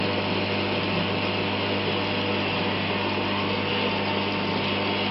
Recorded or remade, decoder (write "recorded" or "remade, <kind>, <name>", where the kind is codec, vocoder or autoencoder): recorded